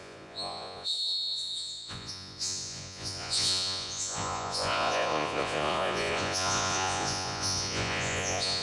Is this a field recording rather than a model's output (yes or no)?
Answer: no